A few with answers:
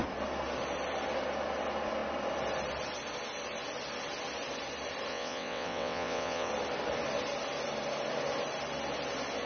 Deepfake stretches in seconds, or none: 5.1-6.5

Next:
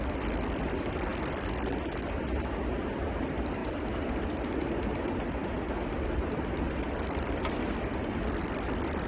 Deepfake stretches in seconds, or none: none

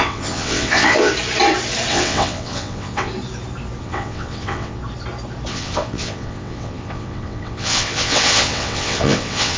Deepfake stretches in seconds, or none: 0.0-1.1; 1.9-3.1; 3.8-4.8; 5.5-9.6

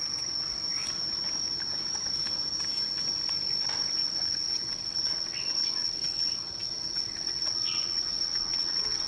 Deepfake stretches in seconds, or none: 4.0-9.1